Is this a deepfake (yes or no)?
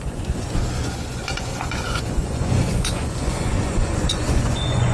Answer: yes